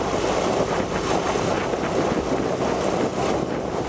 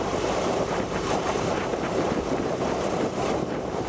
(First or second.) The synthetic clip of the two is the second